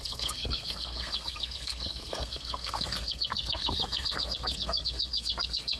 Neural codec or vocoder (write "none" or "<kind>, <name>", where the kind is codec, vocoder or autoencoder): codec, SNAC